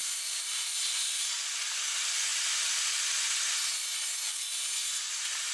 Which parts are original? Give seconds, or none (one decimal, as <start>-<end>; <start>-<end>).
1.4-4.8